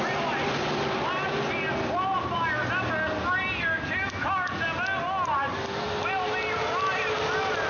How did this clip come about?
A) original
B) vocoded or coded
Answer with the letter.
A